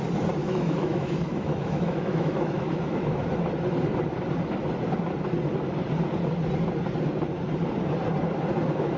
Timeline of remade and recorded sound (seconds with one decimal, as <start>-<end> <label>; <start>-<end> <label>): 0.0-0.4 recorded; 0.4-3.3 remade; 3.3-9.0 recorded